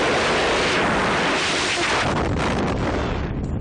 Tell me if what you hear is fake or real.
real